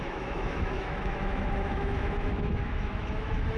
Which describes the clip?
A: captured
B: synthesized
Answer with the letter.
B